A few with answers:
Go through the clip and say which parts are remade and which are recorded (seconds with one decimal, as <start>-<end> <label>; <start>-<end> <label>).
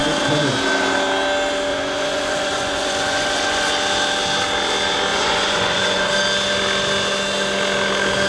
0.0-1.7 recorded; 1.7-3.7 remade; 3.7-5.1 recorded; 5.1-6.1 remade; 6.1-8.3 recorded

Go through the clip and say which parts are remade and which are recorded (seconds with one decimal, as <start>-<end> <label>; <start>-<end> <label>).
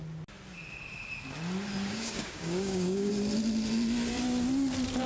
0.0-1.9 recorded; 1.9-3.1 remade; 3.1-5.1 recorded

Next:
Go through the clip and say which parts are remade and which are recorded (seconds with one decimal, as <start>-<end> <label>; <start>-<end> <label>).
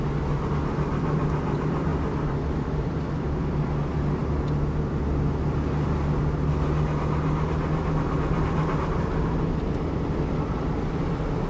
0.0-1.9 recorded; 1.9-3.5 remade; 3.5-11.5 recorded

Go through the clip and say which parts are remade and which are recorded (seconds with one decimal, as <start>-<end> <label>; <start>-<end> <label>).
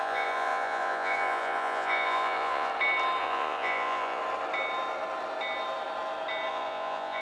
0.0-2.7 remade; 2.7-3.2 recorded; 3.2-4.2 remade; 4.2-6.5 recorded; 6.5-7.2 remade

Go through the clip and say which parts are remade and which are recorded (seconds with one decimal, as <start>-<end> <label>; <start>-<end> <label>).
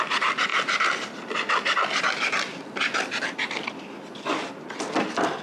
0.0-5.4 recorded